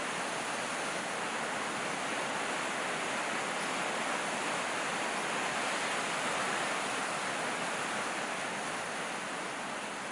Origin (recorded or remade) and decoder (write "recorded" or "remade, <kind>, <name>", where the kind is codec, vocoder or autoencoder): recorded